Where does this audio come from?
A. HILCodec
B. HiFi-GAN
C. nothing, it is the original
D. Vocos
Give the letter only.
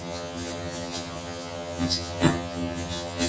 B